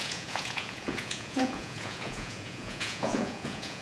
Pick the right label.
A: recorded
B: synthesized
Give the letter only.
B